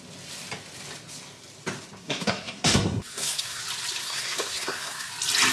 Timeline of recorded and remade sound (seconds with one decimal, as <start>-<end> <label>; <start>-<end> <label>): 0.0-2.0 recorded; 2.0-3.6 remade; 3.6-4.0 recorded; 4.0-5.1 remade; 5.1-5.5 recorded